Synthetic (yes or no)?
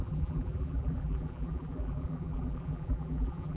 yes